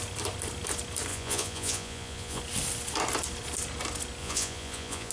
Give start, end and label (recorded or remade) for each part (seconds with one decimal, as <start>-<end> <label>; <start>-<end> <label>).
0.0-1.1 recorded; 1.1-2.4 remade; 2.4-4.2 recorded; 4.2-5.1 remade